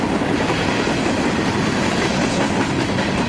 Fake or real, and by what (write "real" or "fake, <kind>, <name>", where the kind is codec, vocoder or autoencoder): real